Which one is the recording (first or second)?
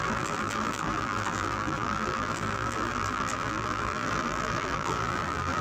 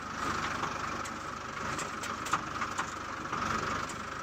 second